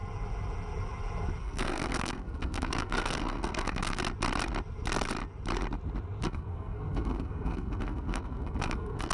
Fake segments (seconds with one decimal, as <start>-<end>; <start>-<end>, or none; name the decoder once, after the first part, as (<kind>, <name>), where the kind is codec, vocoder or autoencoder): 1.4-4.0 (codec, SNAC); 6.2-9.1